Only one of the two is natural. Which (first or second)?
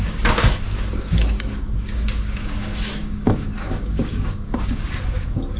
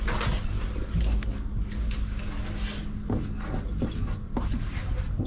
second